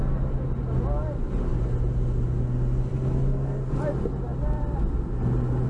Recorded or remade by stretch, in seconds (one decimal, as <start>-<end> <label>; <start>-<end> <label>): 0.0-5.7 recorded

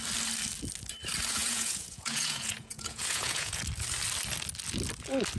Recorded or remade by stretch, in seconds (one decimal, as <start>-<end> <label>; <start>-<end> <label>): 0.0-1.4 recorded; 1.4-3.6 remade; 3.6-5.4 recorded

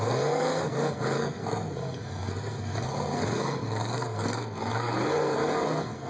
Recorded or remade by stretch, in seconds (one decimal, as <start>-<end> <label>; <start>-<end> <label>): 0.0-6.1 remade

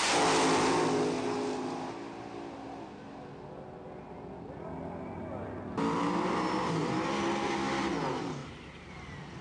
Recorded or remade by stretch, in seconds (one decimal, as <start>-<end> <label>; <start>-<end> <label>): 0.0-8.4 recorded; 8.4-8.9 remade; 8.9-9.4 recorded

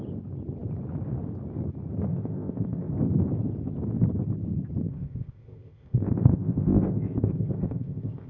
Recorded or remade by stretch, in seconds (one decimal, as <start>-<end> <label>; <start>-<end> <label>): 0.0-2.1 recorded; 2.1-2.9 remade; 2.9-4.8 recorded; 4.8-8.3 remade

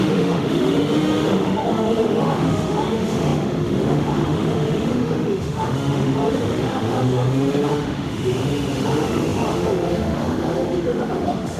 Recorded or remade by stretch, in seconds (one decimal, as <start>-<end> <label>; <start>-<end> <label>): 0.0-11.6 remade

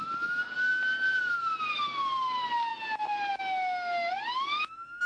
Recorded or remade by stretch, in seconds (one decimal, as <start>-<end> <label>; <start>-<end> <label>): 0.0-5.1 recorded

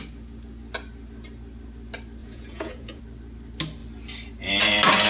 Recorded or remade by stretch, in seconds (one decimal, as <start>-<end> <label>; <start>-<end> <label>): 0.0-2.2 recorded; 2.2-3.0 remade; 3.0-5.1 recorded